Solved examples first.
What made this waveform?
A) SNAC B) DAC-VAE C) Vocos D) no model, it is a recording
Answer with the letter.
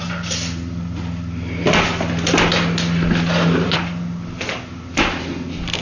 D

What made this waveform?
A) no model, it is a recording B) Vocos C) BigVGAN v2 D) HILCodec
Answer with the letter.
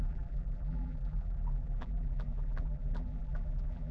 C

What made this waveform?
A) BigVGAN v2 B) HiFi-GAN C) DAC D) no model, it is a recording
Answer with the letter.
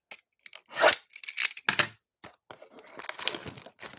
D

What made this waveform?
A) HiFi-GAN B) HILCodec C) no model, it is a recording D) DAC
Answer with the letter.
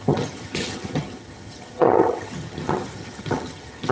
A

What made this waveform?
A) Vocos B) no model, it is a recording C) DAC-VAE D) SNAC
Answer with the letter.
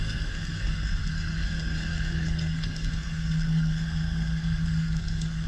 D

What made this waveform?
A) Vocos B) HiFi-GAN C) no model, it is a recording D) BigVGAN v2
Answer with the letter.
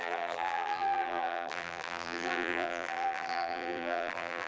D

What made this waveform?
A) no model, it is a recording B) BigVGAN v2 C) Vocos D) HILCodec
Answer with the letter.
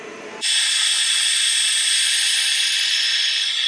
A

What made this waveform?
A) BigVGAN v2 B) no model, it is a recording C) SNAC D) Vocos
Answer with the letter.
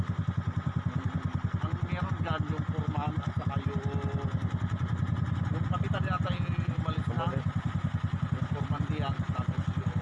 B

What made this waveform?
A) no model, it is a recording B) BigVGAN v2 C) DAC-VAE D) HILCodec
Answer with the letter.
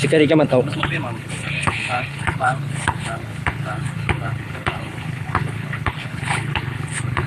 D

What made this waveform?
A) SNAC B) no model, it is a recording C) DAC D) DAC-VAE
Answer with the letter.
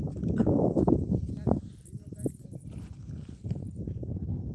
B